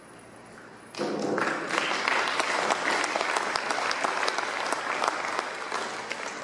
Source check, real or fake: real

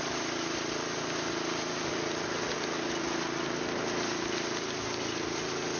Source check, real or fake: fake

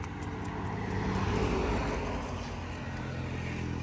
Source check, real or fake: real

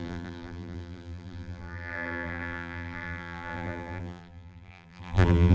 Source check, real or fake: fake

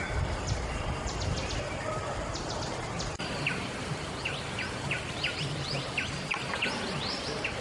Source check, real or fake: fake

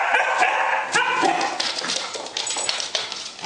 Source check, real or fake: real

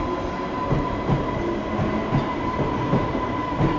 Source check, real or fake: real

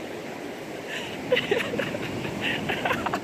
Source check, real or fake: real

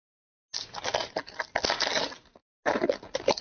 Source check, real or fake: real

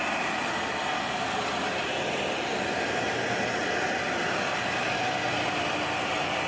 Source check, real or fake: real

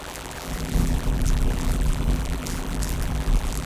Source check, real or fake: fake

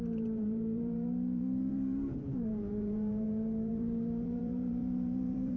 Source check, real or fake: fake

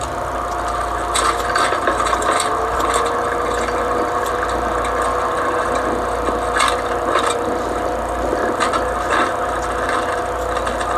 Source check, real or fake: real